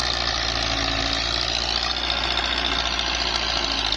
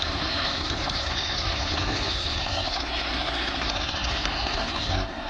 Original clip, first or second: first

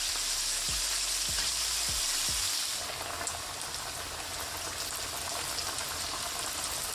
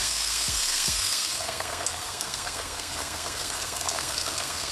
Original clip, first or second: first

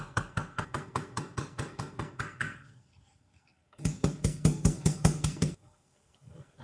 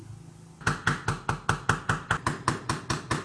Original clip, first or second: second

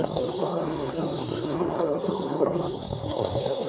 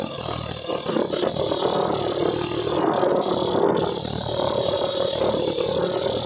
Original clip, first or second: second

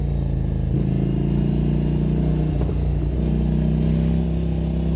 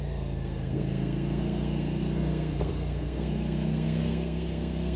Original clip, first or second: first